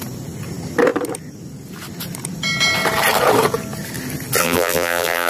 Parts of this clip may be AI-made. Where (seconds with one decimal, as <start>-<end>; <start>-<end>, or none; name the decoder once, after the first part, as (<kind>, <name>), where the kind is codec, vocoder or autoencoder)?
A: 4.4-5.3 (vocoder, BigVGAN v2)